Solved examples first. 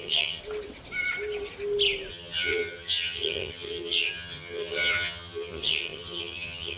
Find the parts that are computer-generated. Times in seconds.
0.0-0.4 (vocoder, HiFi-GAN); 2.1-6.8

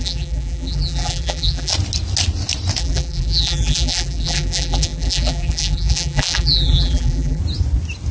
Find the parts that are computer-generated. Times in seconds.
0.0-1.7 (vocoder, BigVGAN v2); 2.8-7.4

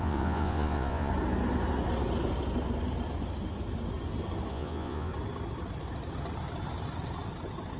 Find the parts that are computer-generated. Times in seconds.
0.0-1.1 (vocoder, Vocos); 4.5-5.1

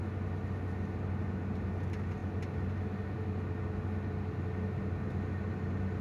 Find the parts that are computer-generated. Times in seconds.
none

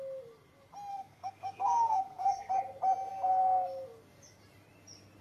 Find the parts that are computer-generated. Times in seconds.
0.9-2.5 (codec, SNAC)